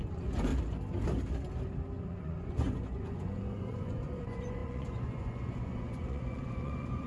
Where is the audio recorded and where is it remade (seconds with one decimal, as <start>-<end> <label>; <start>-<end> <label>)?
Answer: 0.0-0.5 remade; 0.5-2.0 recorded; 2.0-7.1 remade